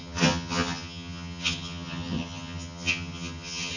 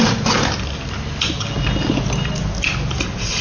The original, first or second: second